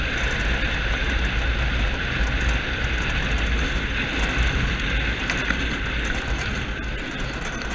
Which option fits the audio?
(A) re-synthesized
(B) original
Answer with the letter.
B